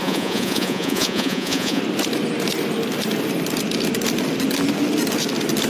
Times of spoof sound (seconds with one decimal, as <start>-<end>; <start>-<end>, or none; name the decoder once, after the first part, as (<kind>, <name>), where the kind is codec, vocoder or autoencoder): 0.0-1.8 (vocoder, Vocos)